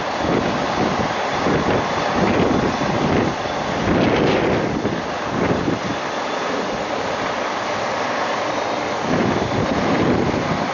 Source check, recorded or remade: recorded